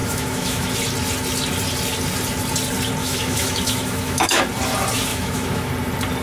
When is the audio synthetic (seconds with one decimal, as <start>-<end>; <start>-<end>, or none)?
0.0-0.7; 3.0-4.4; 5.1-5.7